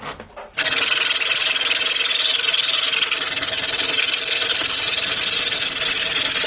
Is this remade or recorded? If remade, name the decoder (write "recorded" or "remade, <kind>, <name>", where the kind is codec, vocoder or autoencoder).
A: recorded